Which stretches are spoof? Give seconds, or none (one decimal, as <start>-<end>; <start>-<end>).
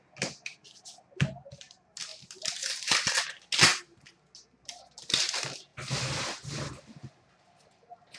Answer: 2.1-3.2